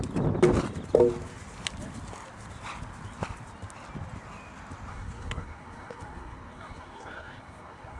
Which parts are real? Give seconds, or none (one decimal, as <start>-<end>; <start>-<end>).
0.0-4.9